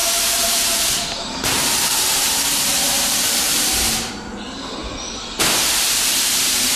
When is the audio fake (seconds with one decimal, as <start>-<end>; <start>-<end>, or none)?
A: 0.0-4.1